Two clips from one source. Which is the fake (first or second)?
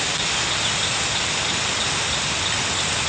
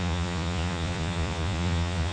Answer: second